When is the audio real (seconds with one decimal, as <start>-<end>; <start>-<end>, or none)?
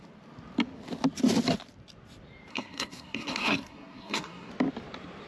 0.0-2.5; 4.5-5.3